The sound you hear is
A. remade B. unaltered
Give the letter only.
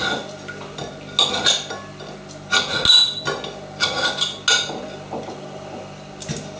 B